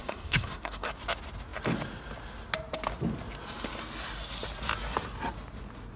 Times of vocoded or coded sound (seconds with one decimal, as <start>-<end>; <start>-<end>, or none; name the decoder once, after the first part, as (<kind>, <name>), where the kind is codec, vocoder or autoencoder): 0.0-0.9 (codec, SNAC)